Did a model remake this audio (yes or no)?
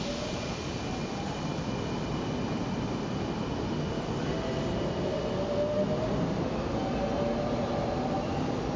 no